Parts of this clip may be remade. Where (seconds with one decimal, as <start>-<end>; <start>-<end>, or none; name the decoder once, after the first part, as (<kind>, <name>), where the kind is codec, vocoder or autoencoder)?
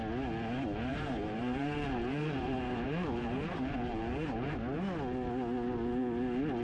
0.9-4.6 (vocoder, BigVGAN v2)